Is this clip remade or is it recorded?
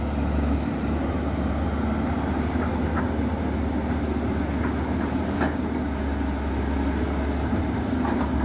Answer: recorded